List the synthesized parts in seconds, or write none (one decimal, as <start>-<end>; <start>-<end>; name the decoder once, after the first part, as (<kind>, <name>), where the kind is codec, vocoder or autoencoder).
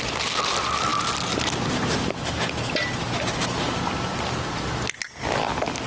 none